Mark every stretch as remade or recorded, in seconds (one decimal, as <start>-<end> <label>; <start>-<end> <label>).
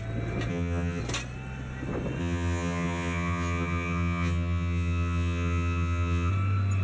0.0-0.5 recorded; 0.5-1.0 remade; 1.0-2.2 recorded; 2.2-6.3 remade; 6.3-6.8 recorded